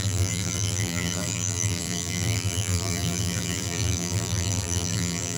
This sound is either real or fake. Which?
fake